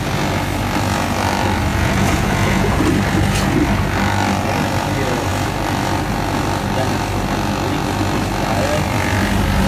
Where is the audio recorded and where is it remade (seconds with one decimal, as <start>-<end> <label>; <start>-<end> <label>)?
0.0-1.7 recorded; 1.7-2.8 remade; 2.8-9.7 recorded